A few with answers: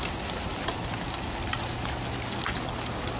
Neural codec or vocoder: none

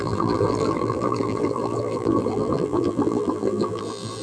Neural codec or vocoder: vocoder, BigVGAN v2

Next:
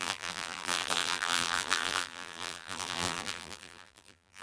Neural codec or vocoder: vocoder, BigVGAN v2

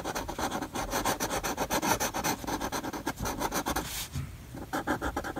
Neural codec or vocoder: none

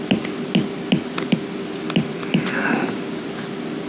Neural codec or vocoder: none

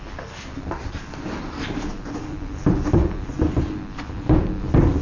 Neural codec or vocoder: none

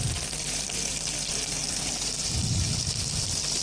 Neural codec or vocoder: vocoder, BigVGAN v2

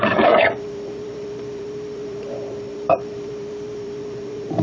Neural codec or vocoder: vocoder, BigVGAN v2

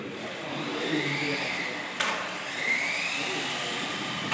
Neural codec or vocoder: vocoder, BigVGAN v2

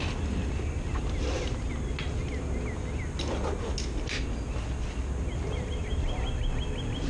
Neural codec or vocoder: none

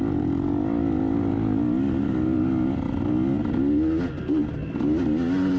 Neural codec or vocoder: none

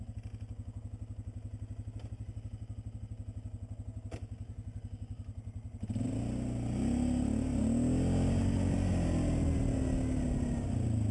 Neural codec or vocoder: none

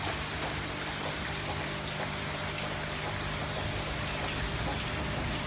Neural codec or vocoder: none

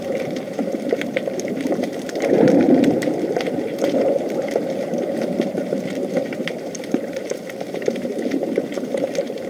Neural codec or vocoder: vocoder, BigVGAN v2